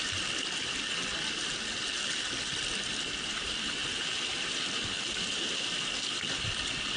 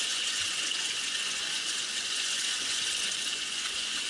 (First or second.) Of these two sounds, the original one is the first